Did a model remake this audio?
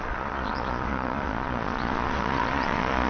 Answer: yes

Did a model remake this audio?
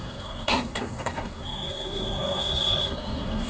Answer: yes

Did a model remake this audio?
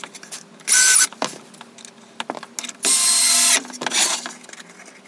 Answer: no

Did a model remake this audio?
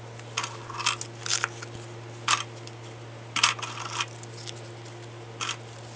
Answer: no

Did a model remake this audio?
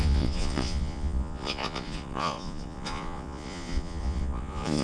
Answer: yes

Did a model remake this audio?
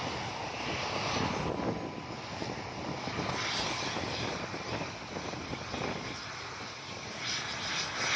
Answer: no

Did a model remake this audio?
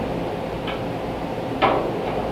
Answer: no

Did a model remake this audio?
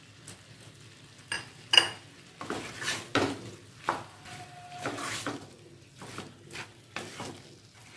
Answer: no